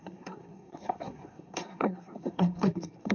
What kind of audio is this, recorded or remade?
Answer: remade